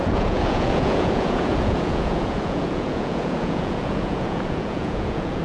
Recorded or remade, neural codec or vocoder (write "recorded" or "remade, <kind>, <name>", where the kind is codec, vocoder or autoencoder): remade, vocoder, Vocos